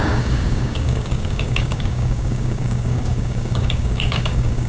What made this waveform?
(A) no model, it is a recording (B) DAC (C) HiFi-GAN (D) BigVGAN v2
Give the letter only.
B